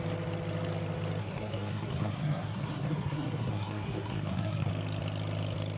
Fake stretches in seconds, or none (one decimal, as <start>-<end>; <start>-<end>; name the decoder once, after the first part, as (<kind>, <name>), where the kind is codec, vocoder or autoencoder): 1.2-4.7 (codec, SNAC)